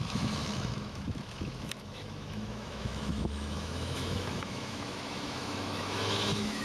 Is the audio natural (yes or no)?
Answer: no